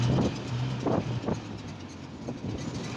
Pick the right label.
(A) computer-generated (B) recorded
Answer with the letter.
B